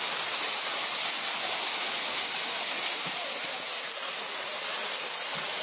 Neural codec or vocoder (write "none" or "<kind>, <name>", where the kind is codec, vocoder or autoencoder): none